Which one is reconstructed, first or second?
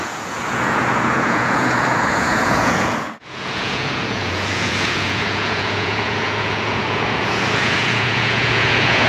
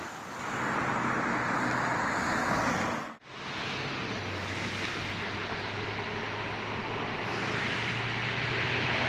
first